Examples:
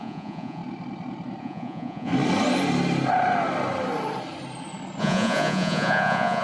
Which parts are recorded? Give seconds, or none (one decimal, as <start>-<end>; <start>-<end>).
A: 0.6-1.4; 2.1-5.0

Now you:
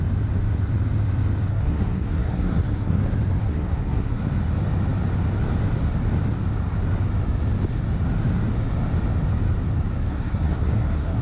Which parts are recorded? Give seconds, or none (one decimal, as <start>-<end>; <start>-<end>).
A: 0.0-1.5; 3.0-3.4; 4.2-10.1

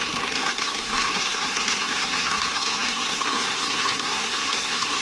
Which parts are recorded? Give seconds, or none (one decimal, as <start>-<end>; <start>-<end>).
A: none

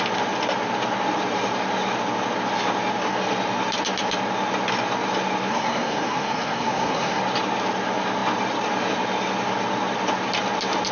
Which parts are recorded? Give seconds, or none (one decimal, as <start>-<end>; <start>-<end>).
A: 0.0-5.5; 7.2-10.9

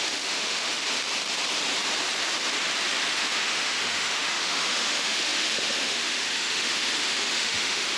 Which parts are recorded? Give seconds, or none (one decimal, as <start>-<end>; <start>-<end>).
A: 0.8-3.1